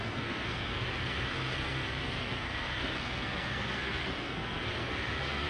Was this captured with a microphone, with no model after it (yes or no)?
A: no